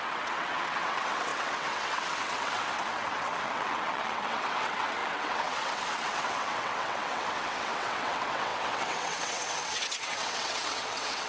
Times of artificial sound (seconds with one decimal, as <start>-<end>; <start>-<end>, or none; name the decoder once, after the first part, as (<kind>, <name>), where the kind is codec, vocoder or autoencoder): 0.0-11.3 (vocoder, WaveNeXt)